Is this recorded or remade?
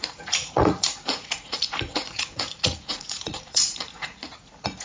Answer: remade